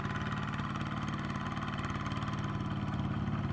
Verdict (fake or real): real